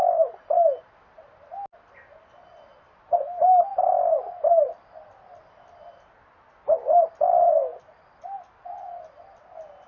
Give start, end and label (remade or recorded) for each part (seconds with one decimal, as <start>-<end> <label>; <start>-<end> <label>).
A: 0.0-3.7 recorded; 3.7-6.5 remade; 6.5-7.7 recorded; 7.7-9.5 remade; 9.5-9.9 recorded